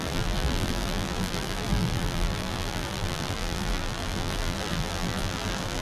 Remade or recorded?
remade